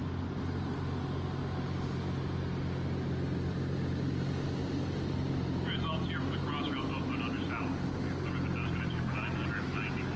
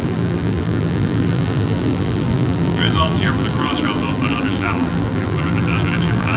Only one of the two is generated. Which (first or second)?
second